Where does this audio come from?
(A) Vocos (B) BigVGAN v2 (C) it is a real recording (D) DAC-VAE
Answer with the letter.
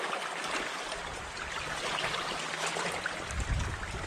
C